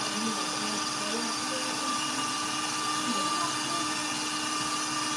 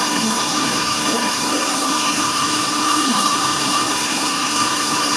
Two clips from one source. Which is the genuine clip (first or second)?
first